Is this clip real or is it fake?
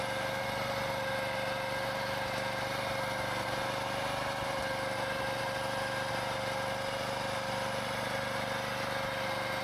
real